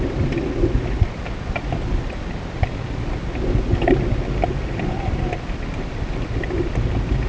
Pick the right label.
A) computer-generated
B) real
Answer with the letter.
B